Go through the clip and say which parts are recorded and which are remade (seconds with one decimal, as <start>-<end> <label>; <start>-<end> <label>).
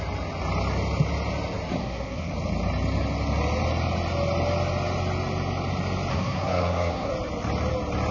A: 0.0-1.8 recorded; 1.8-2.3 remade; 2.3-6.1 recorded; 6.1-7.1 remade; 7.1-8.1 recorded